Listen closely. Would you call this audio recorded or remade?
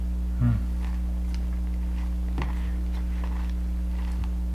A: recorded